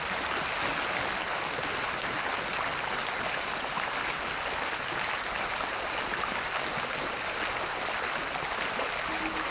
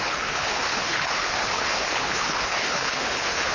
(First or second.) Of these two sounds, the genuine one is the first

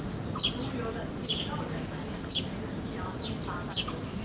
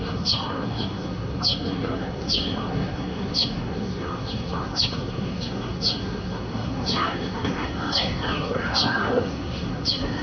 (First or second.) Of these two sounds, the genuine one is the first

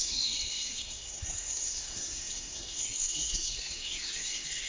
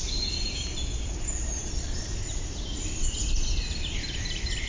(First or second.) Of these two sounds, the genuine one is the second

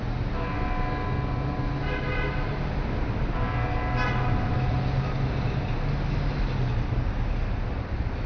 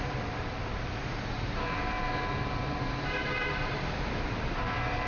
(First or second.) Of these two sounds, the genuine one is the first